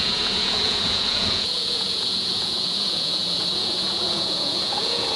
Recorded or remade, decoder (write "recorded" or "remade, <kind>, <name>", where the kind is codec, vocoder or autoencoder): remade, vocoder, Vocos